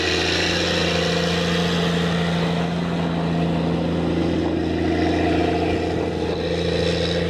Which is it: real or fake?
real